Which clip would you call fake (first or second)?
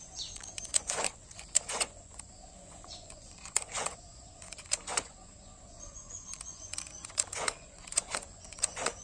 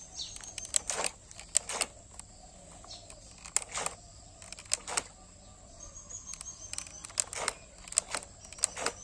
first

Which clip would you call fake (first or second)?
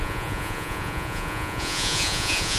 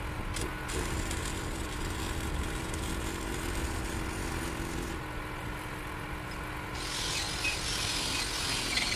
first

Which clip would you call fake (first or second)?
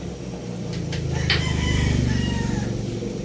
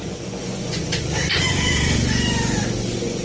second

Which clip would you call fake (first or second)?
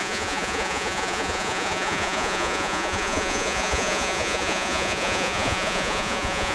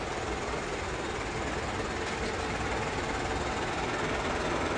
first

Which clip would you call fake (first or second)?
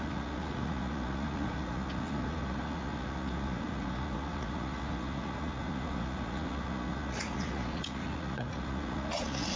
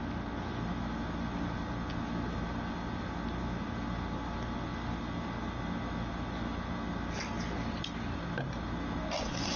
first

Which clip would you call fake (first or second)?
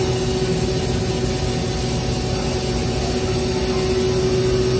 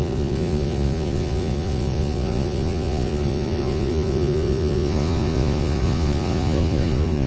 second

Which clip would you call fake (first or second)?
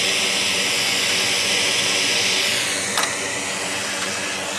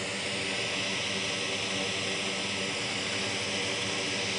first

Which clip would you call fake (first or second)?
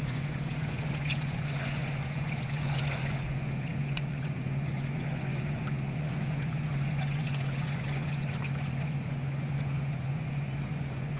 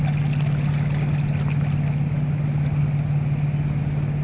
first